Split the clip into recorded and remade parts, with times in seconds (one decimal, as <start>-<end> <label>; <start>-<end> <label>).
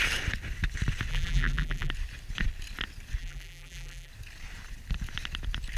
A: 0.0-1.1 recorded; 1.1-1.9 remade; 1.9-3.2 recorded; 3.2-4.1 remade; 4.1-5.8 recorded